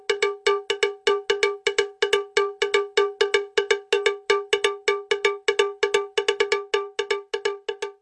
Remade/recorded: recorded